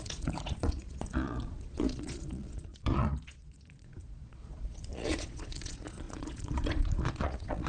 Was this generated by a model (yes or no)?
yes